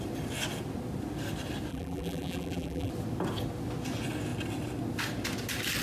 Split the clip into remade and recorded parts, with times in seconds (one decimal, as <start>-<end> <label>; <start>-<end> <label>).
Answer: 0.0-1.7 recorded; 1.7-2.9 remade; 2.9-5.8 recorded